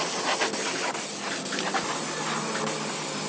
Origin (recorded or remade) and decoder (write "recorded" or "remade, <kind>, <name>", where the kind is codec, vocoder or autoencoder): recorded